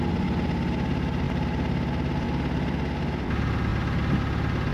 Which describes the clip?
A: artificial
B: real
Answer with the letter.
B